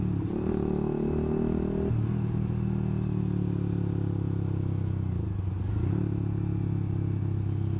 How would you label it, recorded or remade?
recorded